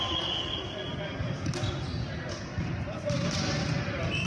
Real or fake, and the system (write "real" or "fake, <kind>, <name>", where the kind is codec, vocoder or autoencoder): real